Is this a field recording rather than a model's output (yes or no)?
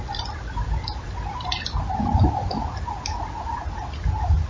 yes